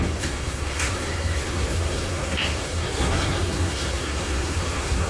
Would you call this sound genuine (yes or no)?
no